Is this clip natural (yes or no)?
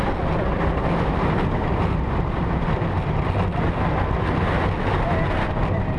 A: yes